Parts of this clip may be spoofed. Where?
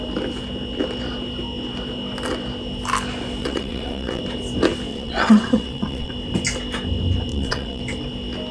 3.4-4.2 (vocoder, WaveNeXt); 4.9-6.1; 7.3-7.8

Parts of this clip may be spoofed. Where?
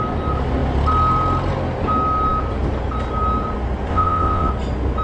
3.9-4.5 (vocoder, WaveNeXt)